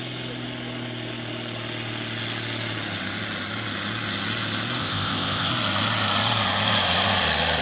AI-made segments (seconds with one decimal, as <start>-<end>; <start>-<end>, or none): 4.8-5.5